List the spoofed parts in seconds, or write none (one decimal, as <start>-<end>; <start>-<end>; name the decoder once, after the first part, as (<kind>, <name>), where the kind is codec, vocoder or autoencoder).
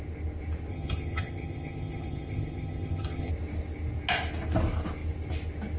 0.7-3.3 (vocoder, HiFi-GAN)